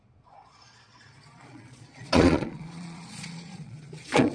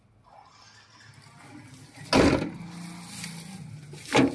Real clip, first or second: second